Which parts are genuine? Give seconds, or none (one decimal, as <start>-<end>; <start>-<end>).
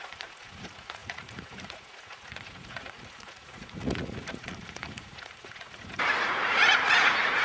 none